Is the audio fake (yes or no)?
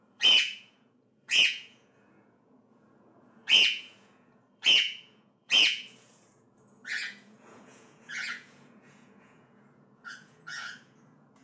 yes